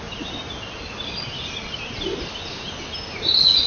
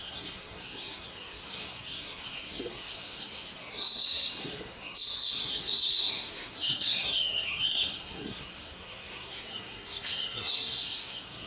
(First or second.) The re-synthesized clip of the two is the second